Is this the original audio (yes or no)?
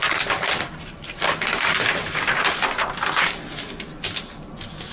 yes